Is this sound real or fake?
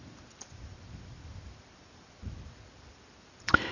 fake